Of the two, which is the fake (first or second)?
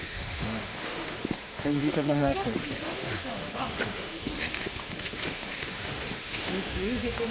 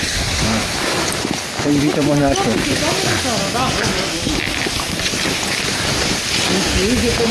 first